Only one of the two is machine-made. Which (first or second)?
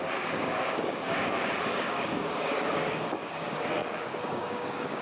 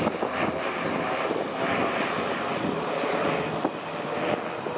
first